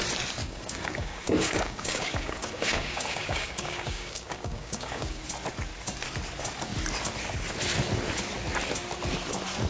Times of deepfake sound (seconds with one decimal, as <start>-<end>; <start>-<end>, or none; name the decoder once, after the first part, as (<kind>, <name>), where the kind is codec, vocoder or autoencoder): 0.4-5.2 (codec, DAC)